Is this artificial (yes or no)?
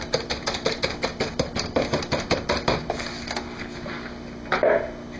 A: no